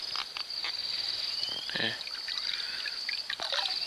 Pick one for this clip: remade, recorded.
recorded